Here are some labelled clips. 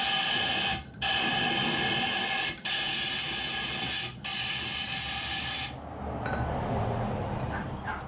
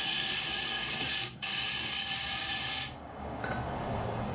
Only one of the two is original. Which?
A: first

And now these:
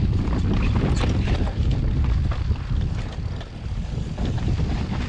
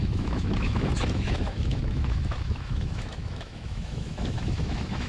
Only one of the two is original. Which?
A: first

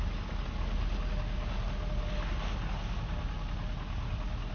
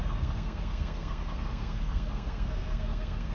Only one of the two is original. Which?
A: first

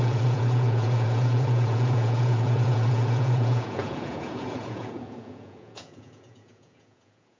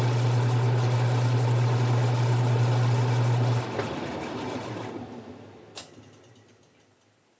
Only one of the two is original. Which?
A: second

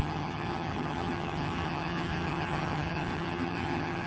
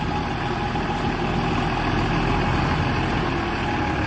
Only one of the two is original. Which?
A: second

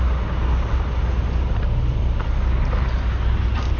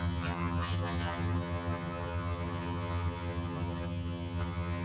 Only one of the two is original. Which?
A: first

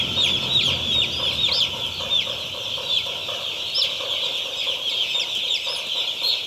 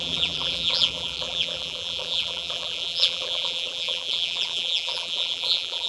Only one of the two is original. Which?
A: first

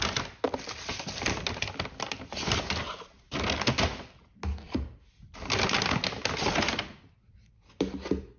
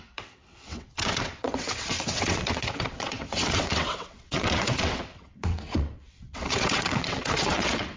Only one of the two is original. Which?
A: first